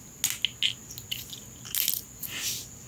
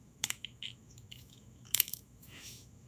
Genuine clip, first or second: first